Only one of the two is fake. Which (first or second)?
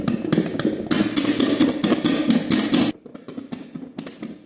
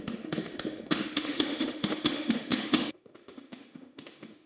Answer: second